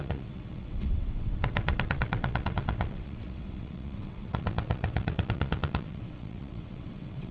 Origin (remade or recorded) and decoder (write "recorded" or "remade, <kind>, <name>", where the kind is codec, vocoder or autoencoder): remade, vocoder, WaveNeXt